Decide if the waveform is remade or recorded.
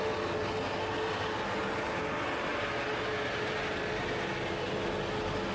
recorded